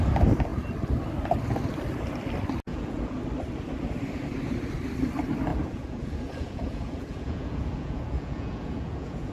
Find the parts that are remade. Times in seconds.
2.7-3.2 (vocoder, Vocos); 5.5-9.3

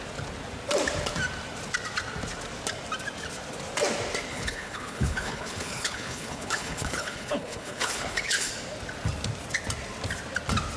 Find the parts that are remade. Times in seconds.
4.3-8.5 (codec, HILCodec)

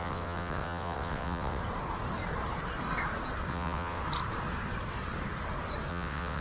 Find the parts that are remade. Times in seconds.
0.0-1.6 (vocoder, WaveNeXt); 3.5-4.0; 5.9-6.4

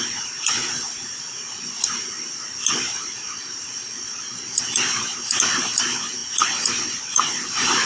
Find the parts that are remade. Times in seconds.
0.0-7.9 (vocoder, BigVGAN v2)